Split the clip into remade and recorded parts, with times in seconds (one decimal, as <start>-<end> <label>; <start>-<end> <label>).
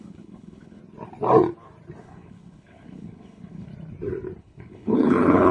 0.0-0.8 remade; 0.8-2.0 recorded; 2.0-3.7 remade; 3.7-4.4 recorded; 4.4-5.5 remade